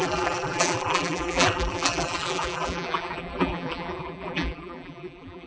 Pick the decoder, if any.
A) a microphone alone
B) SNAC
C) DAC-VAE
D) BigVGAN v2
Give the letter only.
D